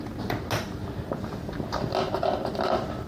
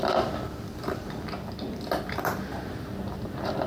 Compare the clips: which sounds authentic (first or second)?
first